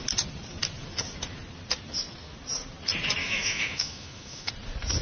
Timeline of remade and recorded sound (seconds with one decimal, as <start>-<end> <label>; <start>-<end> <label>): 0.0-3.2 recorded; 3.2-4.5 remade; 4.5-5.0 recorded